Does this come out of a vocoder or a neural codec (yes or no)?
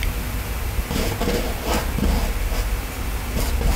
no